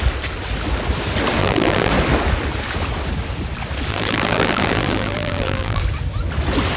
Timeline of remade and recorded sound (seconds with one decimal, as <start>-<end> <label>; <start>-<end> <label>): 0.0-1.4 recorded; 1.4-1.9 remade; 1.9-3.9 recorded; 3.9-5.8 remade; 5.8-6.8 recorded